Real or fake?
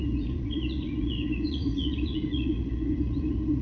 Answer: fake